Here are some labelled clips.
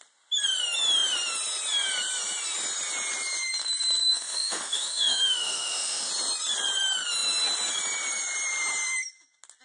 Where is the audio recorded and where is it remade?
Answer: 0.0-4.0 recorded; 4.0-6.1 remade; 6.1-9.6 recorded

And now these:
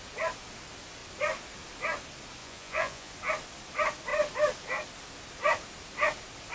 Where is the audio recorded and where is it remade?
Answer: 0.0-2.4 recorded; 2.4-3.1 remade; 3.1-6.5 recorded

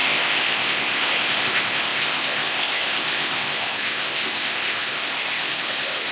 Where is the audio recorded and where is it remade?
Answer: 0.0-6.1 remade

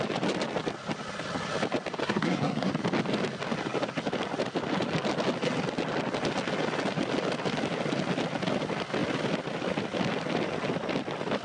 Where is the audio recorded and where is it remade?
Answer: 0.0-2.0 recorded; 2.0-2.7 remade; 2.7-11.4 recorded